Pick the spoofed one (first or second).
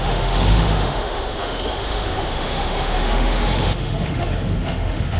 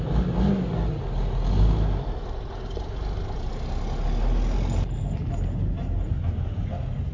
first